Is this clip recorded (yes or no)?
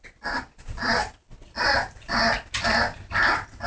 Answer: yes